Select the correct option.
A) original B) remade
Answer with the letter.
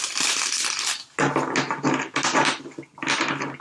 A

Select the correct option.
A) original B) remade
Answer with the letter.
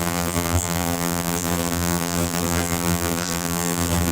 B